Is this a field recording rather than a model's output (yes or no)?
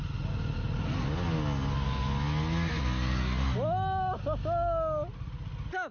yes